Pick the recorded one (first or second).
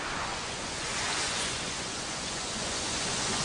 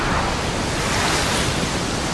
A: second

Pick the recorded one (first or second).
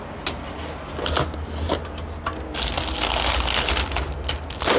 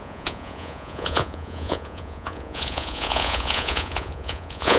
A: first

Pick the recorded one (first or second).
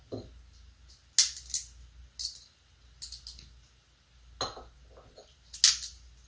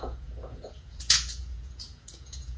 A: first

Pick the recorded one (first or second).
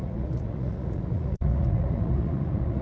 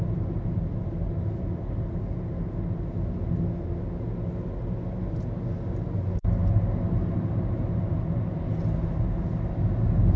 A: second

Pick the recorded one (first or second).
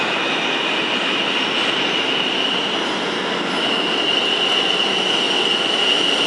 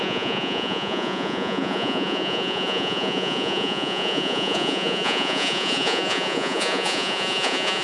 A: first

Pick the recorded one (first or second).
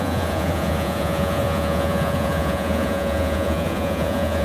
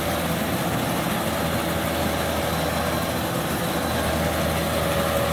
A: second